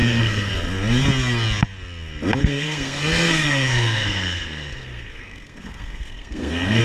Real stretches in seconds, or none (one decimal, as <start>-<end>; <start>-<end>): 0.5-2.4